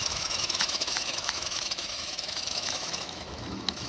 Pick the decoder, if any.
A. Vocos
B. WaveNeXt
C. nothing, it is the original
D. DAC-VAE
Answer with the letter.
D